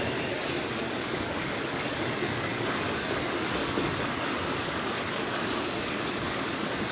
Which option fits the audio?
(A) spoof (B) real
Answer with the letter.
A